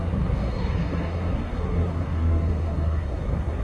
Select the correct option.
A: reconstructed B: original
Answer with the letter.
A